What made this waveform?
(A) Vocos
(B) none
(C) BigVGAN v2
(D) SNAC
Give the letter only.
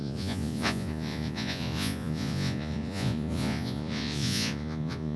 A